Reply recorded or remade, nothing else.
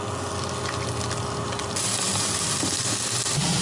recorded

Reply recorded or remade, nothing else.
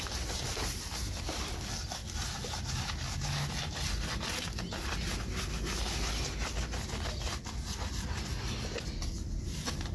recorded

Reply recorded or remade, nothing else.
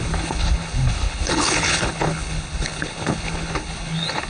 remade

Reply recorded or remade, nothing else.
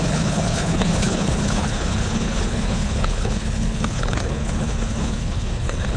remade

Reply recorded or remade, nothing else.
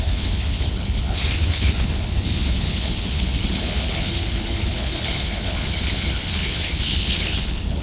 remade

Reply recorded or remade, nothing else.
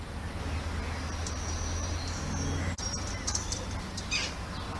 recorded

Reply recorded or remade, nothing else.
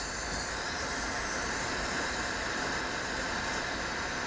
recorded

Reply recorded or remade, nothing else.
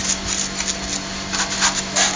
recorded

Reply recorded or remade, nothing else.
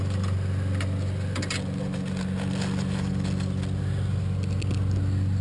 recorded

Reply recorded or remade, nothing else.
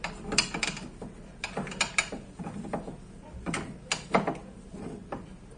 recorded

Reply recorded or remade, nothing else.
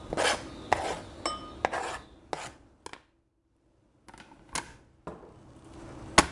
recorded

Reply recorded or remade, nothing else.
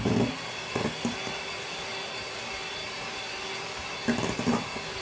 recorded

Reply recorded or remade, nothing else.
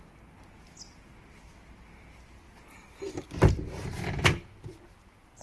recorded